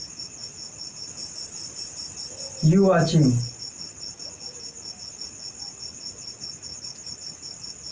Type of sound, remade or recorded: recorded